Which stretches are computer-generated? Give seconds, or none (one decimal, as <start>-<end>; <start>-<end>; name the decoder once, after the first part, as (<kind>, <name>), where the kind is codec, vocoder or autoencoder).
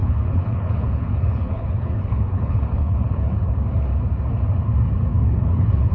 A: 0.0-3.5 (codec, HILCodec); 5.1-5.9